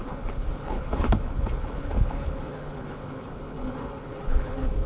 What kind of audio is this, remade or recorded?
remade